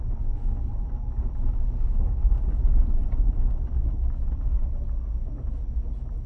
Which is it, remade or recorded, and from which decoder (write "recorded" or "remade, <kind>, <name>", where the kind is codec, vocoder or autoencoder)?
recorded